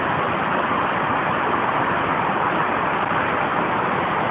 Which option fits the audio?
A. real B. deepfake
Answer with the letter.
A